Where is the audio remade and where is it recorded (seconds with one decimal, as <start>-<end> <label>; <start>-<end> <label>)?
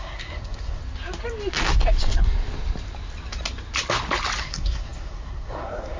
0.0-0.8 remade; 0.8-4.4 recorded; 4.4-6.0 remade